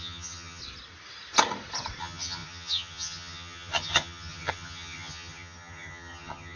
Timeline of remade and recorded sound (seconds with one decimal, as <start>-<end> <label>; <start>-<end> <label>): 0.0-0.6 remade; 0.6-2.0 recorded; 2.0-6.6 remade